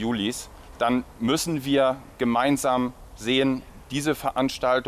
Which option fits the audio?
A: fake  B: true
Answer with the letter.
B